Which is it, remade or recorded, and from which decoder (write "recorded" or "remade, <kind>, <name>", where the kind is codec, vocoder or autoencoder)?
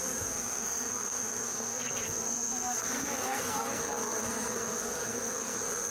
remade, codec, SNAC